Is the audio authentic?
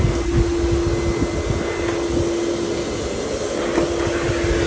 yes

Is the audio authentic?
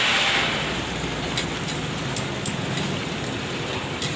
yes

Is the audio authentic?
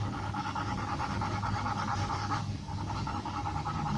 no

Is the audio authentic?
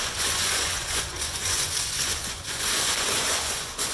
no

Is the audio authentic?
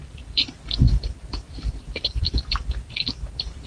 no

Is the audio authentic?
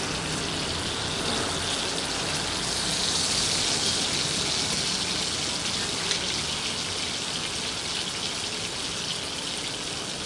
yes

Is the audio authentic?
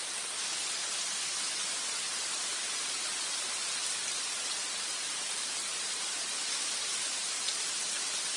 no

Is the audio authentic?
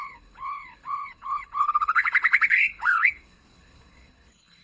no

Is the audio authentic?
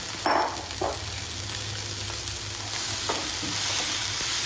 yes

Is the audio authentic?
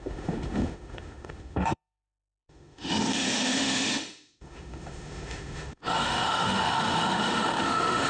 no